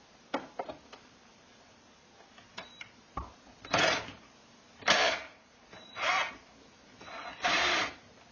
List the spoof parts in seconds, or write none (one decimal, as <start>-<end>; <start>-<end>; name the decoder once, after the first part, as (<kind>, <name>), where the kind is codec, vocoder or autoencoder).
2.5-7.3 (vocoder, BigVGAN v2)